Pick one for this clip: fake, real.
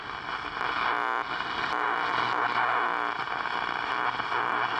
real